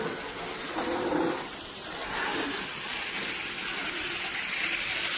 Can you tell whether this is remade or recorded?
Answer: recorded